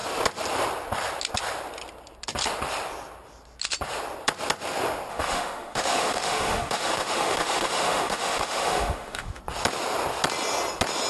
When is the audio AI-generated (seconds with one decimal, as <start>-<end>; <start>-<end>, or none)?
5.1-9.4